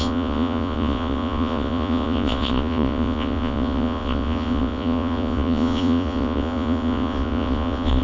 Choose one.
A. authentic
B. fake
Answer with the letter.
B